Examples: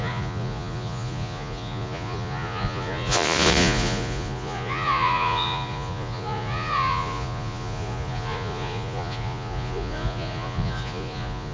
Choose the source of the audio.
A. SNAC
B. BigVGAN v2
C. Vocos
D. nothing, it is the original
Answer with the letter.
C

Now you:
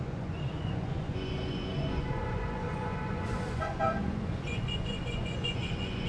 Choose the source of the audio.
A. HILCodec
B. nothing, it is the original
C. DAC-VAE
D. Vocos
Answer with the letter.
D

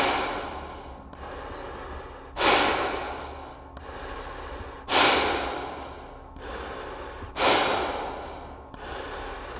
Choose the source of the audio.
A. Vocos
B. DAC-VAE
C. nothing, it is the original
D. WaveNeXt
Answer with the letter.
C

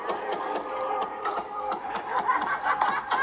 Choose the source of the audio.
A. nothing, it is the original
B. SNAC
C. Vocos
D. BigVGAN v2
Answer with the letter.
D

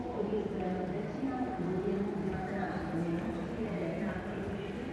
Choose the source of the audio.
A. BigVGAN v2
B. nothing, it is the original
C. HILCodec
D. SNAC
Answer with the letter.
B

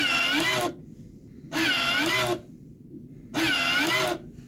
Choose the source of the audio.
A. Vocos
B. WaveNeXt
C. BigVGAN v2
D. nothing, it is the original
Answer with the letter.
D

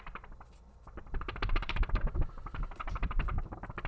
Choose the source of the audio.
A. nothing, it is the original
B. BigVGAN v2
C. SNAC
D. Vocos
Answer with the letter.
B